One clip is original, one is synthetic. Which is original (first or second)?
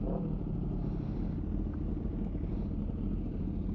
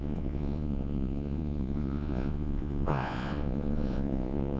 first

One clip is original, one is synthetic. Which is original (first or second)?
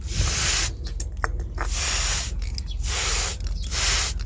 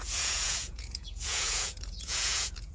first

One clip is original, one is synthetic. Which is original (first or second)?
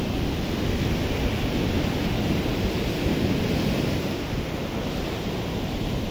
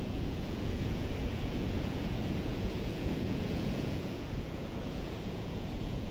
first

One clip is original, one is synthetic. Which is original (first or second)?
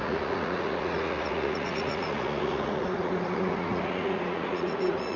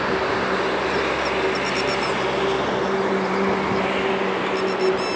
second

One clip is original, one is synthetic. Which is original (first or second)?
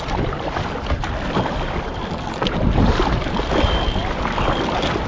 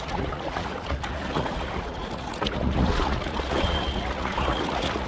first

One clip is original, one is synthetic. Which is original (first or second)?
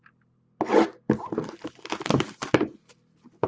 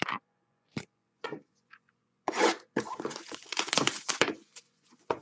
first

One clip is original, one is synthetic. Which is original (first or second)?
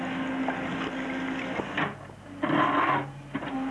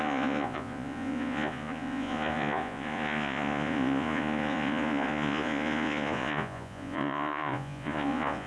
first